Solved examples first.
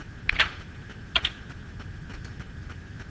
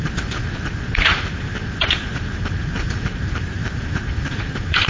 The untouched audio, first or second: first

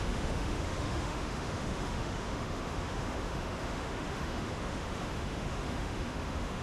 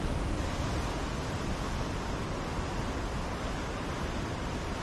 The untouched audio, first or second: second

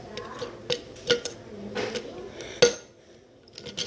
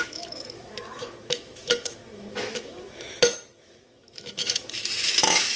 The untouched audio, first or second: first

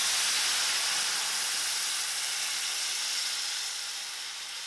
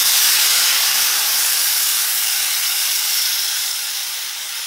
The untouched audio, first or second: first